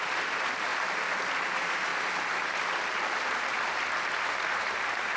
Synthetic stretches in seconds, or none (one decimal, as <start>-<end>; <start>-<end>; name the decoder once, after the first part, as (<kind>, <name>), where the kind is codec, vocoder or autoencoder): 0.0-0.7 (vocoder, BigVGAN v2); 1.4-1.9; 4.5-5.2